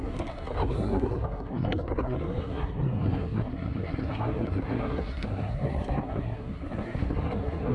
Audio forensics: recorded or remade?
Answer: remade